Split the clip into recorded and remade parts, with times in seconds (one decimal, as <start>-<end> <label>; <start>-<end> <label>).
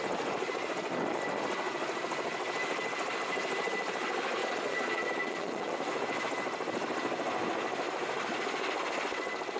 0.0-4.4 recorded; 4.4-5.7 remade; 5.7-9.6 recorded